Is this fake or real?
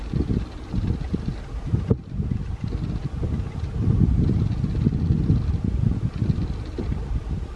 real